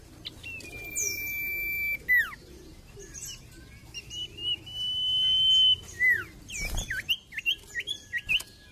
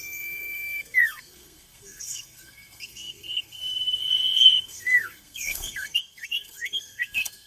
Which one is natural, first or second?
first